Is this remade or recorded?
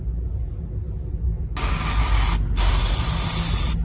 recorded